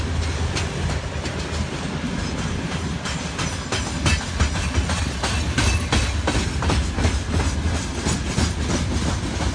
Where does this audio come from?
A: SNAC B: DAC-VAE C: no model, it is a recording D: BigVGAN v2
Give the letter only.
C